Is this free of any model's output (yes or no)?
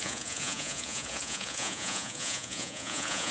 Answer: no